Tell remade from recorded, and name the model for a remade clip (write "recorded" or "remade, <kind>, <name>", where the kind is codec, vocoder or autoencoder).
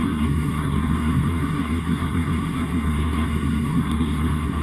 remade, codec, SNAC